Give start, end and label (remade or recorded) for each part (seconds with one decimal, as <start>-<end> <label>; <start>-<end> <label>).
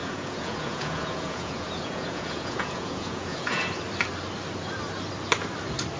0.0-3.6 remade; 3.6-6.0 recorded